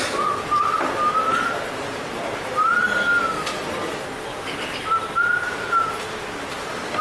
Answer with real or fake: real